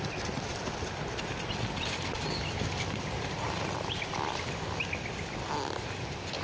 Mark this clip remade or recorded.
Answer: recorded